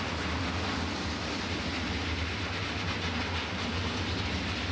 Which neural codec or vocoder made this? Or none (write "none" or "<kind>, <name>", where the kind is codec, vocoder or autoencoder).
none